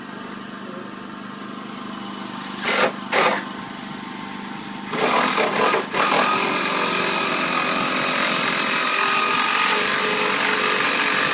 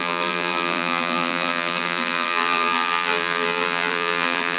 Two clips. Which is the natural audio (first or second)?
first